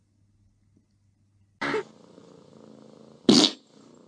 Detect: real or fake real